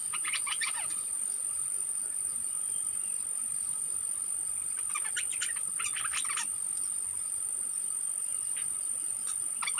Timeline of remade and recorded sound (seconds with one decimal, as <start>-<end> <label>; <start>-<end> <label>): 0.0-1.1 remade; 1.1-9.8 recorded